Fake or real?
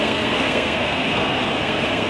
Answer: fake